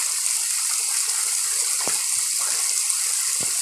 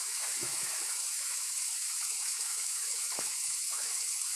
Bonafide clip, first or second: first